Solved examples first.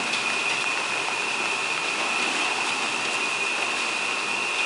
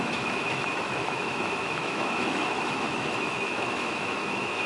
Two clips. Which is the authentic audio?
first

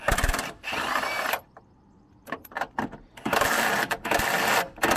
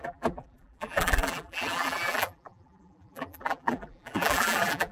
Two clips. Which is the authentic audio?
first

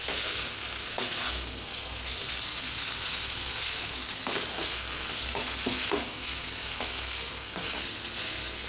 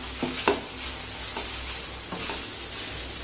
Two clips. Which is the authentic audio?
second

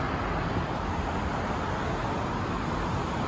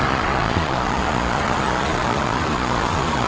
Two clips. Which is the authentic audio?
first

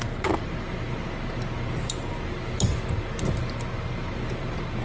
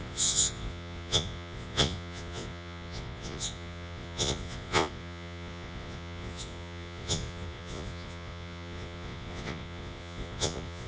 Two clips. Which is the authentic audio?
first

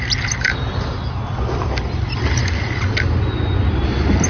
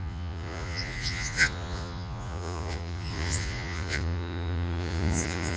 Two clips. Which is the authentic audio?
first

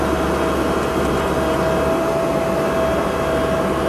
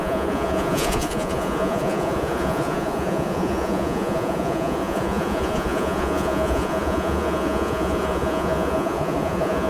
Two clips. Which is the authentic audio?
first